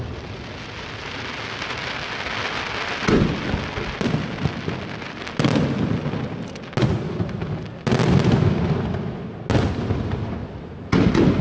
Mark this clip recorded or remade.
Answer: recorded